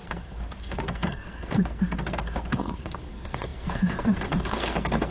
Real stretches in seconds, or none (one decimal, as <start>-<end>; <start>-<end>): none